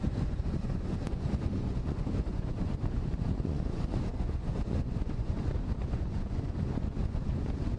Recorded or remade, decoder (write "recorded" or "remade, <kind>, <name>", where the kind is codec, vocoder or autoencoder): remade, vocoder, Vocos